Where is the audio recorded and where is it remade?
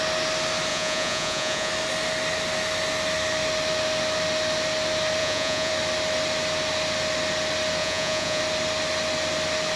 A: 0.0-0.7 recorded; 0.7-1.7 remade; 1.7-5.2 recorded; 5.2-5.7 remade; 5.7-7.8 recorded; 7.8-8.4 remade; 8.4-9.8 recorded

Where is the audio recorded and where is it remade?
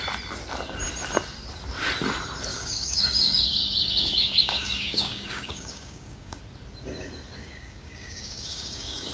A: 0.0-2.5 recorded; 2.5-6.4 remade; 6.4-7.4 recorded; 7.4-9.1 remade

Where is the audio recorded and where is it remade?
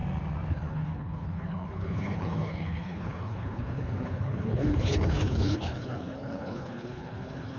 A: 0.0-0.5 recorded; 0.5-7.6 remade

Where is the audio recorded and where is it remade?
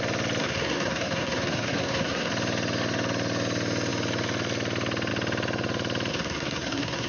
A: 0.0-0.4 recorded; 0.4-2.3 remade; 2.3-6.1 recorded; 6.1-7.1 remade